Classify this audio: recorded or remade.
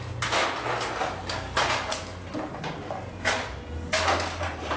recorded